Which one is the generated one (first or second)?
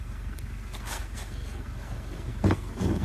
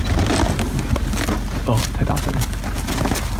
first